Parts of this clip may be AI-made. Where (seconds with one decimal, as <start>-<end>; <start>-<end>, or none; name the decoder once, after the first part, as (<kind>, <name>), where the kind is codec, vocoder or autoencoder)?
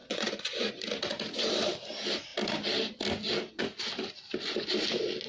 0.0-0.7 (vocoder, Vocos)